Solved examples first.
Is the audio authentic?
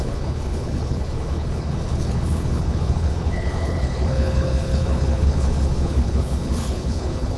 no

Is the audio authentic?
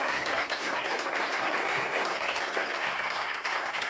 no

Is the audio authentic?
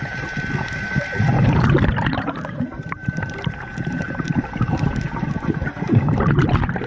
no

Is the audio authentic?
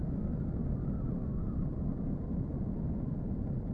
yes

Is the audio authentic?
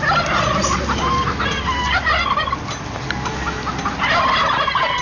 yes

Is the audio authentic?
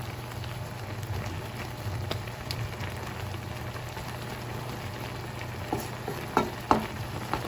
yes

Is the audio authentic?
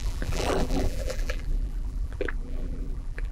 no